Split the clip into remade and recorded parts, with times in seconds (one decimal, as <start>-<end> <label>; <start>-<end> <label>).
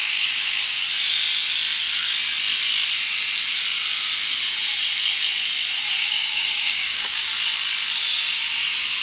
0.0-0.8 remade; 0.8-6.0 recorded; 6.0-7.3 remade; 7.3-9.0 recorded